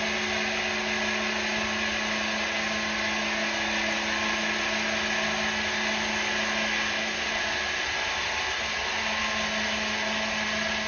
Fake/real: real